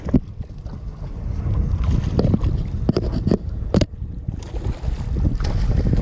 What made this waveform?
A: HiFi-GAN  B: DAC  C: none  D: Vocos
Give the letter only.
C